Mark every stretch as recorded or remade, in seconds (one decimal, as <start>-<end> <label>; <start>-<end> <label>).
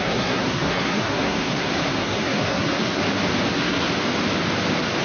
0.0-3.0 remade; 3.0-3.5 recorded; 3.5-3.9 remade; 3.9-5.0 recorded